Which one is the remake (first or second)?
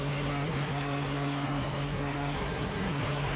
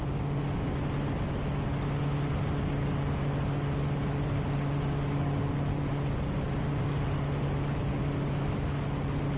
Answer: first